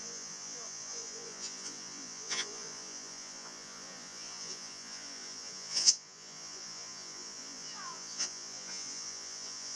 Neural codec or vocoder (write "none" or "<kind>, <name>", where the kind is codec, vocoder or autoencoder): vocoder, Vocos